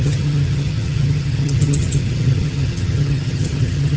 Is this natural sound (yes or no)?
no